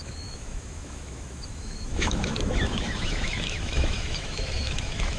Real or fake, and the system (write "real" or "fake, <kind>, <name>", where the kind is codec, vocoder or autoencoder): fake, autoencoder, DAC-VAE